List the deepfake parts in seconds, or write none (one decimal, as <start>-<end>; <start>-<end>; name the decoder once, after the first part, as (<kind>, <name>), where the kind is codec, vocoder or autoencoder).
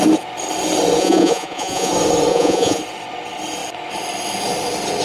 1.0-1.9 (vocoder, Vocos); 2.3-2.8